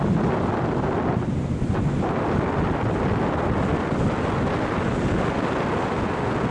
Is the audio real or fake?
real